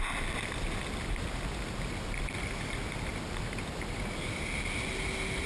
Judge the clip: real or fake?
real